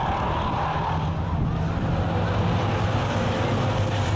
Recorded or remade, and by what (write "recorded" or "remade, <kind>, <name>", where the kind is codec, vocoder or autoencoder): recorded